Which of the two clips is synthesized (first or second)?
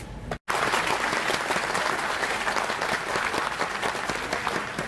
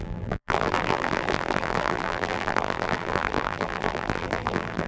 second